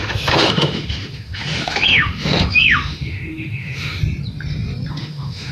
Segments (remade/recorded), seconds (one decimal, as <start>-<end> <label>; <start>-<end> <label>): 0.0-4.0 remade; 4.0-4.9 recorded; 4.9-5.5 remade